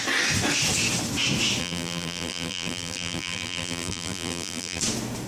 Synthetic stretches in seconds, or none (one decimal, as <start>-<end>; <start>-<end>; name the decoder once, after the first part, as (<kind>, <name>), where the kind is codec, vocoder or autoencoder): 1.6-4.8 (vocoder, BigVGAN v2)